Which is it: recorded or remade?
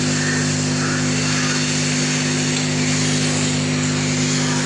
recorded